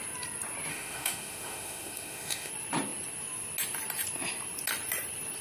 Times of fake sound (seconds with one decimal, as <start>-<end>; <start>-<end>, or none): 0.7-2.5